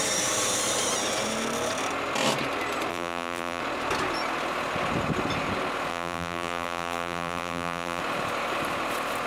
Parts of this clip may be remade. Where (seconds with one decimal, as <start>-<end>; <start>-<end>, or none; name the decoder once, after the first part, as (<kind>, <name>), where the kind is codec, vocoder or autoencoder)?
2.9-3.6 (vocoder, BigVGAN v2); 5.9-8.0